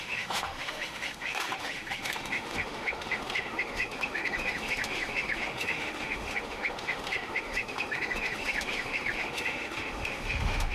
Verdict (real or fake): fake